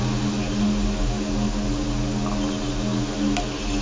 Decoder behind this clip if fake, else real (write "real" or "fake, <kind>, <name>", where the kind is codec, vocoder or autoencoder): real